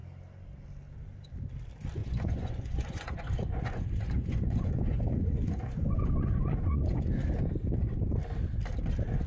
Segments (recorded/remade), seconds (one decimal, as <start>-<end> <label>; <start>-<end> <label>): 0.0-2.0 recorded; 2.0-7.0 remade; 7.0-9.3 recorded